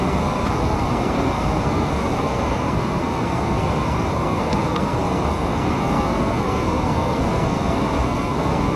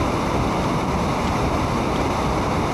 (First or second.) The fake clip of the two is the first